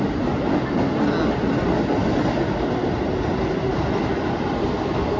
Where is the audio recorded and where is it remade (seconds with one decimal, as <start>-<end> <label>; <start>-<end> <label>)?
0.0-5.2 recorded